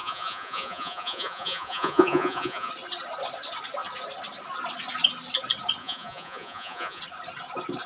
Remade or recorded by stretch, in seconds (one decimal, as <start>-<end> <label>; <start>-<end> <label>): 0.0-2.7 remade; 2.7-5.8 recorded; 5.8-7.0 remade; 7.0-7.9 recorded